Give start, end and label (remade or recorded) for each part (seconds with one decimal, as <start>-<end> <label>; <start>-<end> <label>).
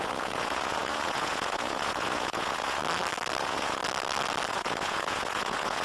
0.0-2.8 remade; 2.8-3.4 recorded; 3.4-3.8 remade; 3.8-4.5 recorded; 4.5-5.8 remade